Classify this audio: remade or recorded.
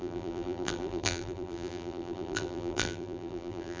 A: remade